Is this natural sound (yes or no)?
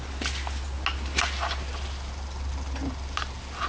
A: yes